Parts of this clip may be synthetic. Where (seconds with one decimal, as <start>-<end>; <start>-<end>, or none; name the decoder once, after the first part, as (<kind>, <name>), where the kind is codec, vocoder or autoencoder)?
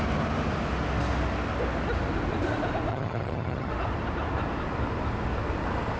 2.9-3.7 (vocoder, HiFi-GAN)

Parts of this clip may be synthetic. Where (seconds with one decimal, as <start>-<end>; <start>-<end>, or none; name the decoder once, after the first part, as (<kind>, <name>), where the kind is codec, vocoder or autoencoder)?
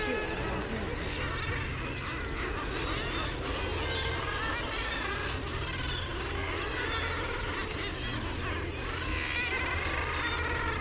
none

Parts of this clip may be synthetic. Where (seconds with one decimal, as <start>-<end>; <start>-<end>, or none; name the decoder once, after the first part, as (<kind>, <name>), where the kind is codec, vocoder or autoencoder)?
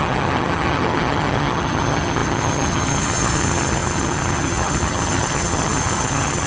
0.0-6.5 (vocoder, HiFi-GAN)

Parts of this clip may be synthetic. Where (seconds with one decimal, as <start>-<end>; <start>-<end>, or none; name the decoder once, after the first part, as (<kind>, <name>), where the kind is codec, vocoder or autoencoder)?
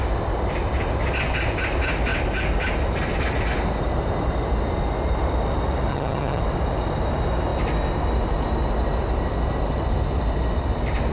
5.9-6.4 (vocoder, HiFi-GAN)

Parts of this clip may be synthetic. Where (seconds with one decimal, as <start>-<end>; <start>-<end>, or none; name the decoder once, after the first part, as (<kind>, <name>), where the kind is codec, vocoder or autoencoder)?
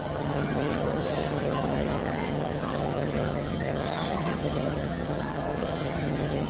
0.0-6.5 (vocoder, HiFi-GAN)